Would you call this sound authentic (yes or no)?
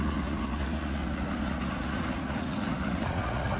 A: no